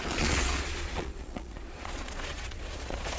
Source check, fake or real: fake